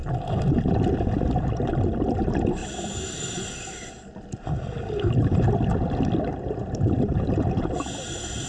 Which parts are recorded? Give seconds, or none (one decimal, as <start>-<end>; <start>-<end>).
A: 0.0-2.6; 7.6-8.5